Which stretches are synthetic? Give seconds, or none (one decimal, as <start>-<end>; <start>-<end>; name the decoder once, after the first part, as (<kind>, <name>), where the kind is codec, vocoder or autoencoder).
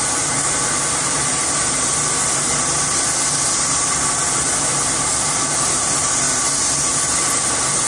none